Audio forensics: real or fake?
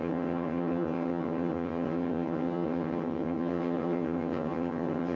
fake